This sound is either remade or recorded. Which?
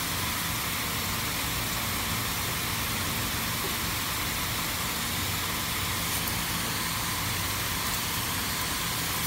recorded